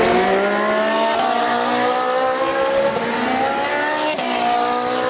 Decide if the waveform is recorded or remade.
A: recorded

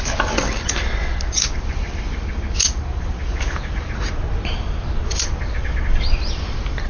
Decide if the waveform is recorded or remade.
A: recorded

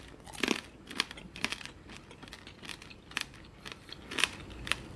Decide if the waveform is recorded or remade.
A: recorded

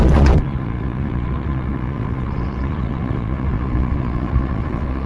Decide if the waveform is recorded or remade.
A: remade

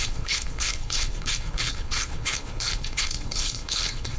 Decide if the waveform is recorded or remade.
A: remade